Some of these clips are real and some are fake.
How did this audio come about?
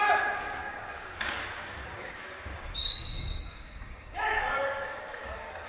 fake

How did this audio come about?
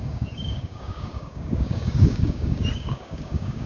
fake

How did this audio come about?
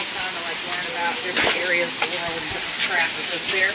real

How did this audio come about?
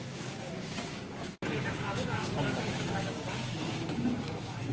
fake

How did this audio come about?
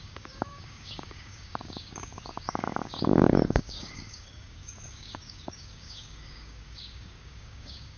fake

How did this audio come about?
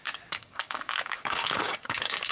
fake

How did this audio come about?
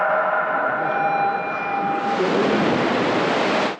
real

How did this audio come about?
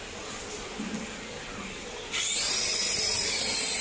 real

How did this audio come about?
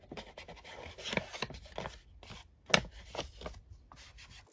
real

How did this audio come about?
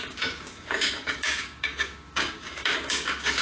fake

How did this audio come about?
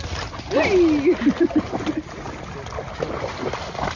real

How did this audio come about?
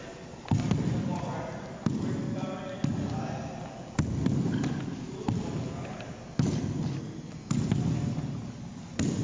real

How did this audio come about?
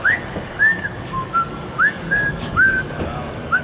fake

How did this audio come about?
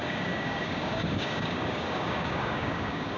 fake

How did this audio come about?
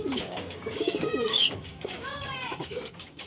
fake